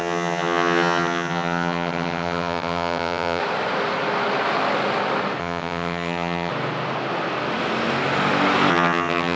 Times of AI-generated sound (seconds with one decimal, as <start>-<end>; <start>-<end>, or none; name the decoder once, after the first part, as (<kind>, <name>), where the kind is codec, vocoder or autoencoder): 0.0-3.4 (vocoder, HiFi-GAN); 5.4-6.5; 8.7-9.4